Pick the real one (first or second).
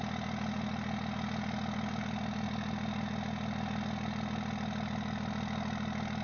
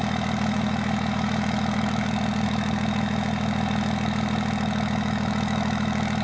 first